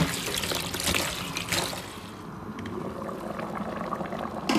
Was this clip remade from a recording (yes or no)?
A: no